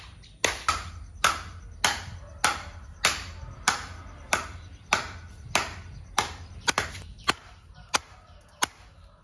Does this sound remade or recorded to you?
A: recorded